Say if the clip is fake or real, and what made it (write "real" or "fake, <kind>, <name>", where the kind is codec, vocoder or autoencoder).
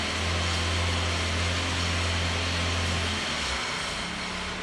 real